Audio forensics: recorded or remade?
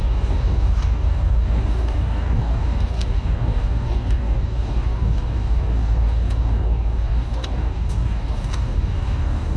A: remade